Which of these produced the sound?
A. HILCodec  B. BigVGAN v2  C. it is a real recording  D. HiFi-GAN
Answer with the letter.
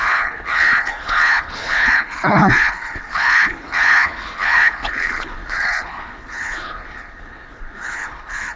A